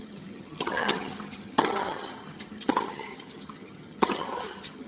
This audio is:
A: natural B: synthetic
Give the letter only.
B